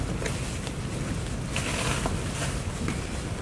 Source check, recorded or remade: recorded